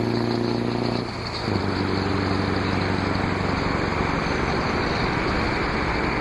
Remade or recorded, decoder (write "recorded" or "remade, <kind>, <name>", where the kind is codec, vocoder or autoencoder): recorded